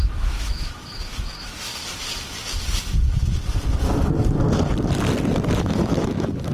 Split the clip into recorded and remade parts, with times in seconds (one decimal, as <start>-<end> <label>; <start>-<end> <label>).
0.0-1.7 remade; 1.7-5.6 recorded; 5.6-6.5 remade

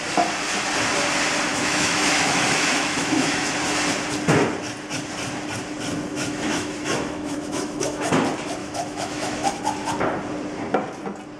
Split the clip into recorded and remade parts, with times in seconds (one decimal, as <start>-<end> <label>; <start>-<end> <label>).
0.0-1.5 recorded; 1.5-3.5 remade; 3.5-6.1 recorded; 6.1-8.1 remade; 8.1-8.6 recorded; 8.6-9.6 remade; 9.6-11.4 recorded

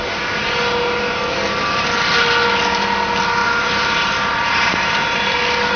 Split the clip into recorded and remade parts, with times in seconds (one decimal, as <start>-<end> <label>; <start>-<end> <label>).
0.0-3.4 recorded; 3.4-5.2 remade; 5.2-5.8 recorded

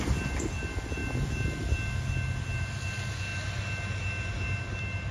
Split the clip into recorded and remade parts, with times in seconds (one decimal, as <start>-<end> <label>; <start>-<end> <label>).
0.0-5.1 recorded